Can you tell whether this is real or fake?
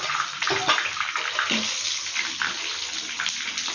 real